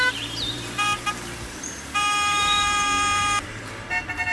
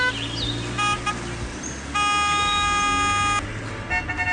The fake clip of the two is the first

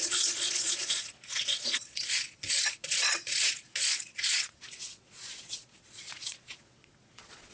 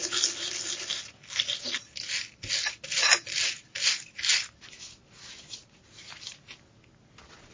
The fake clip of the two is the first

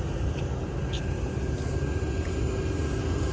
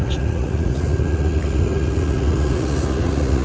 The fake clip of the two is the second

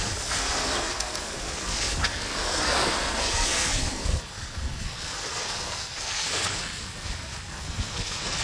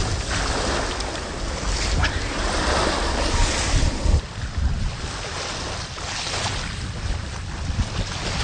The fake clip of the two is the first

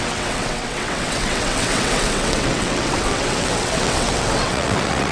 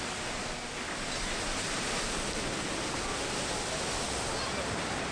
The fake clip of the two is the first